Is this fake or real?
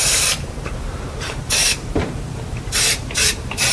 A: fake